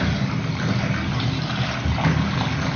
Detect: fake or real real